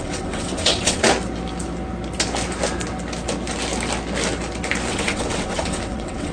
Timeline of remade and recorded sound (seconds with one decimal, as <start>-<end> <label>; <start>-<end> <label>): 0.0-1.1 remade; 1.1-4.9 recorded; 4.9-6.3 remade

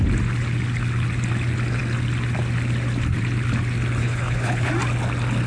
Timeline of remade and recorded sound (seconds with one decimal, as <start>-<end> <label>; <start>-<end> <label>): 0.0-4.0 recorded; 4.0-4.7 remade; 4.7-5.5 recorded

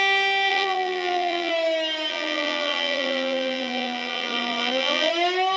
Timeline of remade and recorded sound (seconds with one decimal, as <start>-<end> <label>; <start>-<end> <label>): 0.0-0.5 recorded; 0.5-1.5 remade; 1.5-2.1 recorded; 2.1-5.1 remade; 5.1-5.6 recorded

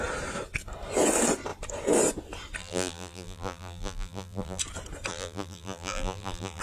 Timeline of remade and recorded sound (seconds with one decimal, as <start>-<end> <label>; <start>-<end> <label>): 0.0-2.6 recorded; 2.6-4.6 remade; 4.6-5.1 recorded; 5.1-6.6 remade

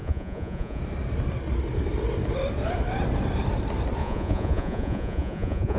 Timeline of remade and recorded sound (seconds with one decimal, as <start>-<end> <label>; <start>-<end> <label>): 0.0-0.8 remade; 0.8-4.0 recorded; 4.0-5.8 remade